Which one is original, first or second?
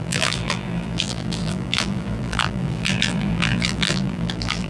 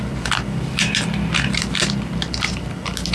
second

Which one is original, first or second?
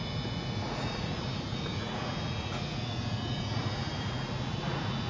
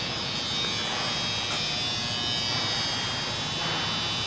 second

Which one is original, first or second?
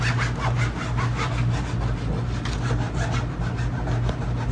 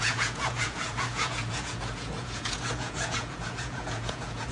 first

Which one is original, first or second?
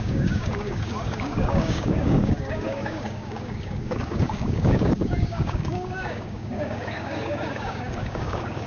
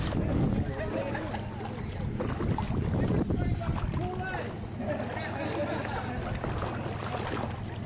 second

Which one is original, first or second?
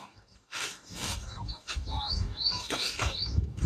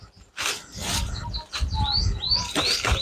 second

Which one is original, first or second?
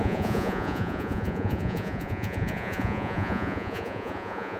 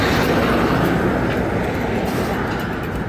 second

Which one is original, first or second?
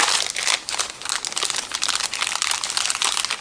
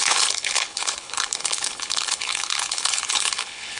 first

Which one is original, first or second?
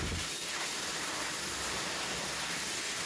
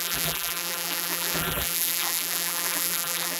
first